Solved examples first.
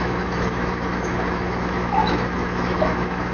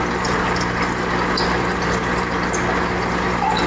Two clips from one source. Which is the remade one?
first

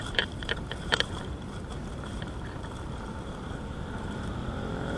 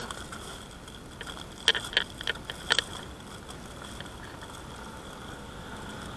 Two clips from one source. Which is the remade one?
first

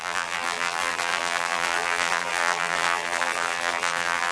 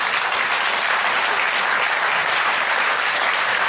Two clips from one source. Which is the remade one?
first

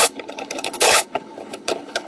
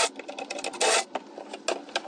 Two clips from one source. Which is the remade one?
first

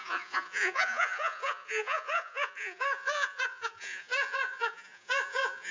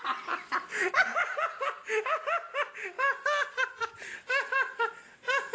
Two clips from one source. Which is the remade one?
first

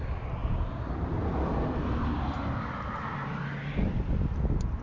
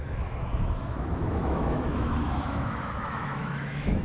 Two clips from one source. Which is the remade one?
second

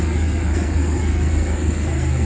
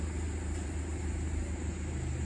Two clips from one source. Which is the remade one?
first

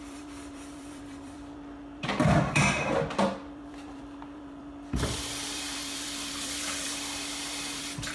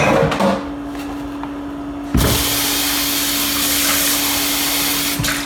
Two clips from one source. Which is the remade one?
first